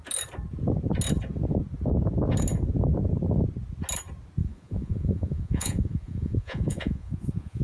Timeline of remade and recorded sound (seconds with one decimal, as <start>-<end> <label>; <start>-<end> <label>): 0.0-4.4 recorded; 4.4-7.6 remade